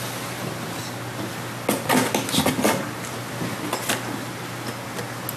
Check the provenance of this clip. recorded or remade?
recorded